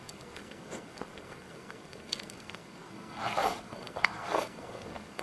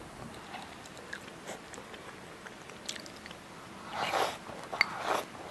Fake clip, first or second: first